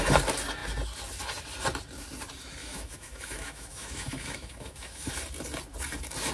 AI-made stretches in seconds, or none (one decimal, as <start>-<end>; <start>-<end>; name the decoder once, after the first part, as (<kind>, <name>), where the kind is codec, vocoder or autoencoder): 2.6-5.1 (autoencoder, DAC-VAE)